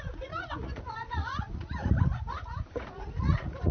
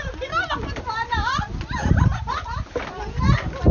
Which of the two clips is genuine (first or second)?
second